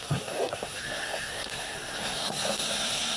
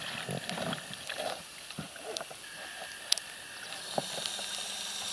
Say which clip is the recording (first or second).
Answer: second